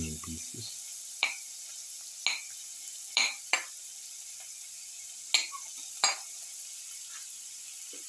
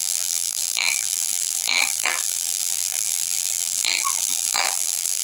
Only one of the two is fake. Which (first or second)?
second